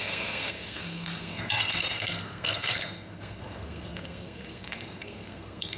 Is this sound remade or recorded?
remade